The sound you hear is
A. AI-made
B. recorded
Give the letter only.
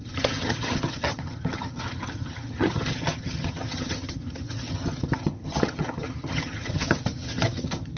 A